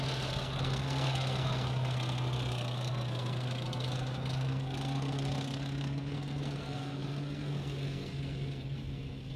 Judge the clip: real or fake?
fake